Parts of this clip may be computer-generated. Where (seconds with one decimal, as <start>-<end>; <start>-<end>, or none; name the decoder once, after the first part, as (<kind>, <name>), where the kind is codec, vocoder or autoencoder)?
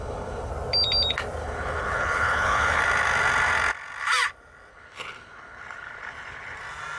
0.0-0.5 (codec, HILCodec); 1.4-2.8; 4.7-6.6